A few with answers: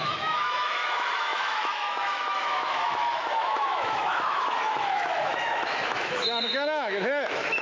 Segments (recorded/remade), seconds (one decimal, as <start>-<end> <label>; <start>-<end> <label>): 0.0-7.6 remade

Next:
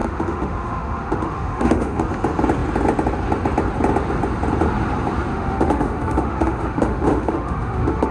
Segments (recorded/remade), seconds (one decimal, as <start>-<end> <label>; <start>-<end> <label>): 0.0-2.0 remade; 2.0-5.3 recorded; 5.3-8.1 remade

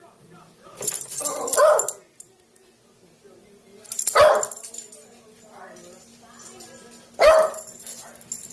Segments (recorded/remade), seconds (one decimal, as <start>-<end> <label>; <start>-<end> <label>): 0.0-8.5 recorded

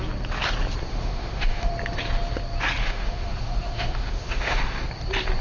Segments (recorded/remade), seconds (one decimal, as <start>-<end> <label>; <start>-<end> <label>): 0.0-0.9 recorded; 0.9-1.7 remade; 1.7-2.8 recorded; 2.8-4.9 remade; 4.9-5.4 recorded

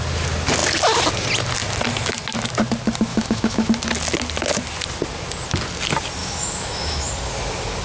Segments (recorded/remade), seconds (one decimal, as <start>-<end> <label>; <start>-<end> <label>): 0.0-3.1 recorded; 3.1-3.7 remade; 3.7-6.2 recorded; 6.2-7.1 remade; 7.1-7.8 recorded

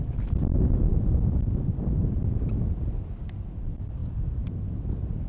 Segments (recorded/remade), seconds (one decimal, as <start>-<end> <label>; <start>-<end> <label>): 0.0-5.3 recorded